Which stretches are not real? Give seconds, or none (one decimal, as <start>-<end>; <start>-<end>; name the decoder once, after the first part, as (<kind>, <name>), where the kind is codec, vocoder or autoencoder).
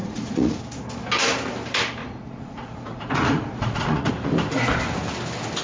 0.0-0.6 (vocoder, Vocos); 2.0-4.1